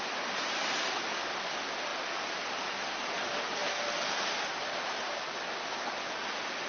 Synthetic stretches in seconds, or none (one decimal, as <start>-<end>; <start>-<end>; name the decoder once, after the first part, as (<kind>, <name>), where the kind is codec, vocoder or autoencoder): none